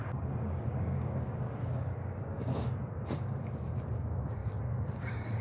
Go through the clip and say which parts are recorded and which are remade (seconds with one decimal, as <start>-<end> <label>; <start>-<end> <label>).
0.0-5.4 remade